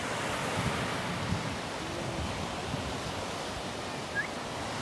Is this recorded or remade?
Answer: recorded